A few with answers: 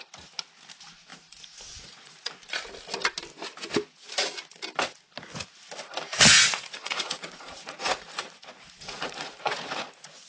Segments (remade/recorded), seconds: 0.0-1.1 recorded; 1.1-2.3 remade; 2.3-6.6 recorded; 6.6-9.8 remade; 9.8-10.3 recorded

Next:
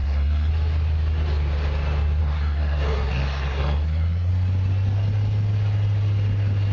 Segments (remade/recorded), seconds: 0.0-0.5 remade; 0.5-2.2 recorded; 2.2-4.3 remade; 4.3-6.7 recorded